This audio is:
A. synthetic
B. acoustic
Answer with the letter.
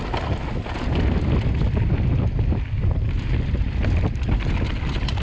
B